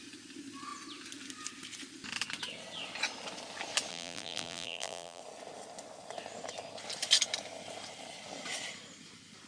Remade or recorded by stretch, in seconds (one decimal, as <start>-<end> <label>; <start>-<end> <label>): 0.0-3.9 recorded; 3.9-5.2 remade; 5.2-9.5 recorded